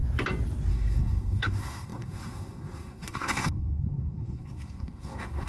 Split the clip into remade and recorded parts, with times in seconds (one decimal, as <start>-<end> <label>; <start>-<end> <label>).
0.0-0.7 recorded; 0.7-5.5 remade